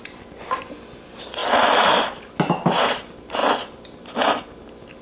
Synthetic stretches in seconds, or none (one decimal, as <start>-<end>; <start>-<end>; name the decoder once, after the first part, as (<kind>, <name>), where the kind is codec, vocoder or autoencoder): none